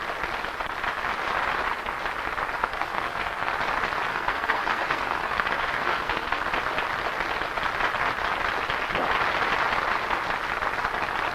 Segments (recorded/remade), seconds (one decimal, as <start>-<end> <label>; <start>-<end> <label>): 0.0-2.6 recorded; 2.6-3.5 remade; 3.5-4.1 recorded; 4.1-6.4 remade; 6.4-11.3 recorded